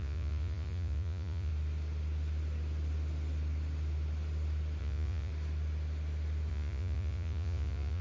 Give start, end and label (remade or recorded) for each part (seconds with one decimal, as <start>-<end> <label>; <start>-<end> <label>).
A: 0.0-1.5 remade; 1.5-4.8 recorded; 4.8-5.3 remade; 5.3-6.5 recorded; 6.5-8.0 remade